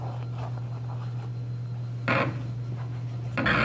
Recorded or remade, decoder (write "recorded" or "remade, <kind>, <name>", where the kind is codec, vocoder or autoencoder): recorded